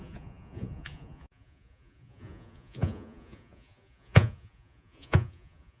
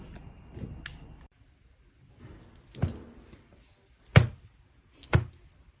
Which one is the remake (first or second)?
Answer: first